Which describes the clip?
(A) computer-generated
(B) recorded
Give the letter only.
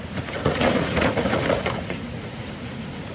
A